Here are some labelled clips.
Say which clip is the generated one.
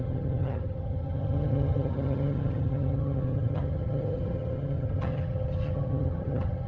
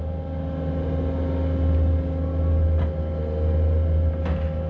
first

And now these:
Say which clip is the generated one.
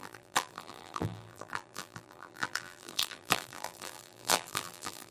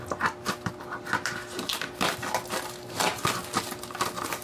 first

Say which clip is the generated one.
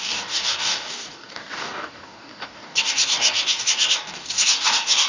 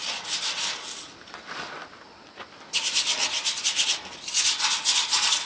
first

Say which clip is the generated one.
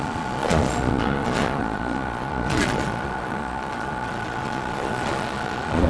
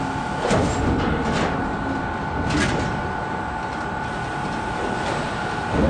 first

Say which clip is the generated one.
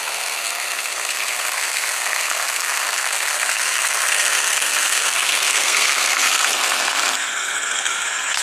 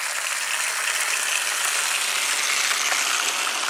first